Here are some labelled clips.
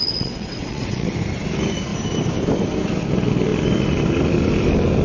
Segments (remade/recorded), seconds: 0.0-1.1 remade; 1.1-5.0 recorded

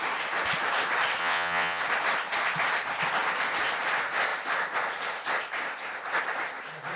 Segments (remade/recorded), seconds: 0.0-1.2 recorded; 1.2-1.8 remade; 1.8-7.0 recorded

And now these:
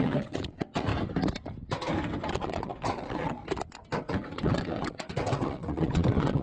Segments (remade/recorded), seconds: 0.0-0.9 remade; 0.9-2.3 recorded; 2.3-3.4 remade; 3.4-4.0 recorded; 4.0-6.4 remade